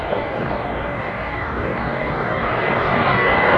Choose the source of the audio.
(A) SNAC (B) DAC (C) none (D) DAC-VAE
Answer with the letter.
B